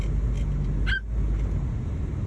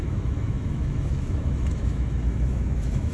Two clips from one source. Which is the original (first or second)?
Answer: first